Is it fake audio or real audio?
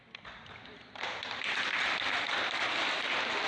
real